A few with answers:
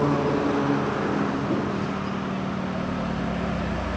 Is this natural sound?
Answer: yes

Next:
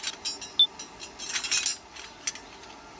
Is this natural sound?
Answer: yes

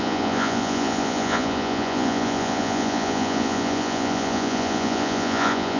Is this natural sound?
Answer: no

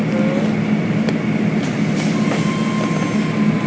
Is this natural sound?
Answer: yes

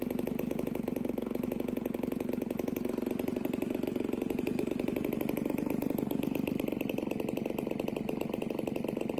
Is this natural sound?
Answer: yes